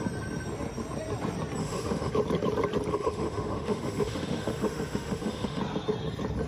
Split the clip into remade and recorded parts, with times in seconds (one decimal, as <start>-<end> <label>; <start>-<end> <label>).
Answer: 0.0-1.6 recorded; 1.6-2.1 remade; 2.1-2.9 recorded; 2.9-5.6 remade; 5.6-6.5 recorded